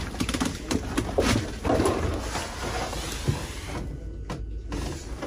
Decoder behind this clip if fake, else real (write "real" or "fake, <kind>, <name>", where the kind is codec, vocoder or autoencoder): real